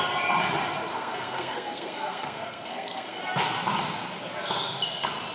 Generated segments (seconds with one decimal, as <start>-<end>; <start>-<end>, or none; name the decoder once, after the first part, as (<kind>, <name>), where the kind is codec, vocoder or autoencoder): 0.9-3.2 (codec, SNAC)